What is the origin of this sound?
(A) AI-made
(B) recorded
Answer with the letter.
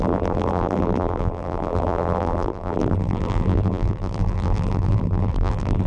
A